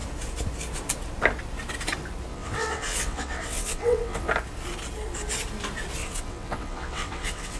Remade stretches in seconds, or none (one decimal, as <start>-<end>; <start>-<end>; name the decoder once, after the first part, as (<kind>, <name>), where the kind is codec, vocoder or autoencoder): 2.3-4.3 (vocoder, WaveNeXt); 6.0-7.6